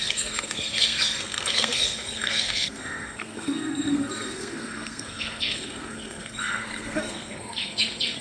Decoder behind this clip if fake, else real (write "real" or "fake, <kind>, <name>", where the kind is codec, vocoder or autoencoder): fake, codec, SNAC